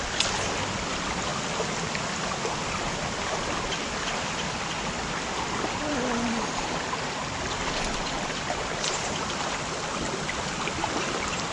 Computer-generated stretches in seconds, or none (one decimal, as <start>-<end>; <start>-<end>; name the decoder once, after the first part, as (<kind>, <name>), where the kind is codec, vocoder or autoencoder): none